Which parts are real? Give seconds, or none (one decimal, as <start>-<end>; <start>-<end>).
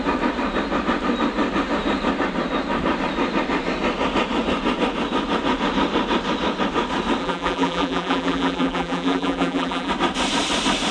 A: 0.0-7.2; 9.9-10.9